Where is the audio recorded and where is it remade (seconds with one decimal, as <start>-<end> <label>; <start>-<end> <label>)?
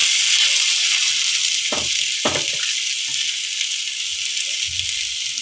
0.0-2.0 remade; 2.0-5.4 recorded